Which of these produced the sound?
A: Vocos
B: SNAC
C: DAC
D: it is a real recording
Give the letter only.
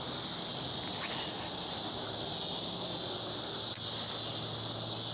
D